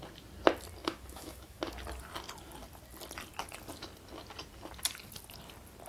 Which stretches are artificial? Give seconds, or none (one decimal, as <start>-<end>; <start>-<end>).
0.8-1.6